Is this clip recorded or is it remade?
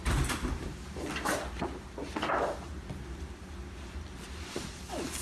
recorded